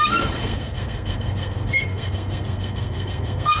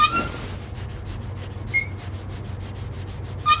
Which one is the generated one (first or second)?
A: first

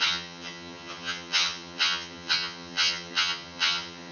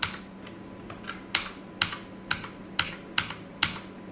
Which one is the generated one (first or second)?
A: first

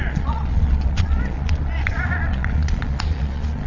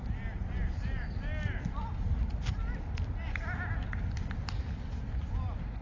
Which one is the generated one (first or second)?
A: first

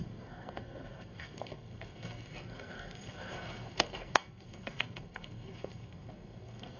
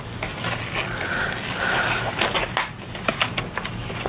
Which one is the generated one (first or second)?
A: first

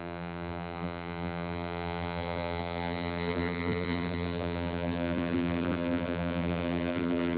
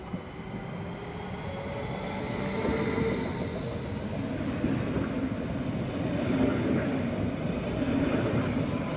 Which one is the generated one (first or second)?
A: first